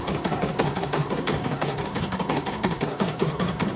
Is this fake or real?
fake